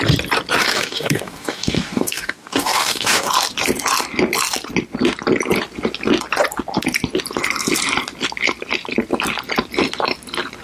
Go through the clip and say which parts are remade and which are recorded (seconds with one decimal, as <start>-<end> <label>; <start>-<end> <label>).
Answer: 0.0-0.6 recorded; 0.6-3.3 remade; 3.3-10.6 recorded